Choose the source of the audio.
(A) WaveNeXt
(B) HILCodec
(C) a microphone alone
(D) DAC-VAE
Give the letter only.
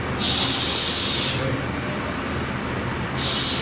C